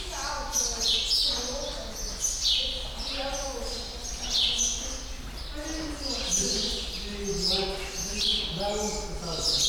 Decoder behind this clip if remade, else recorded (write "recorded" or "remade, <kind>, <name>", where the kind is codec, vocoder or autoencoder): recorded